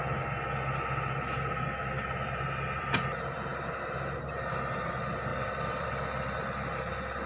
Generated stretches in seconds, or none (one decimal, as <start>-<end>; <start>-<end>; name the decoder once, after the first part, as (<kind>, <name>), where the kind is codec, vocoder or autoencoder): 5.3-5.9 (vocoder, BigVGAN v2)